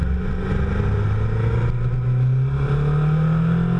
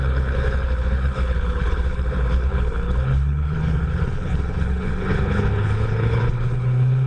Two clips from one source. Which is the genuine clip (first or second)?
first